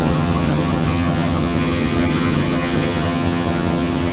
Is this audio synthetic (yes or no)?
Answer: yes